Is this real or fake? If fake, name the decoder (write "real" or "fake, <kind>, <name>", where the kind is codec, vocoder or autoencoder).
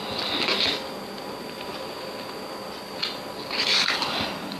real